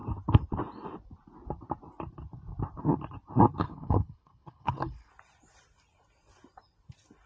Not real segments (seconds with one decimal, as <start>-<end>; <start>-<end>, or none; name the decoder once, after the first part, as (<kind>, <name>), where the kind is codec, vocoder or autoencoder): 3.6-5.1 (codec, HILCodec)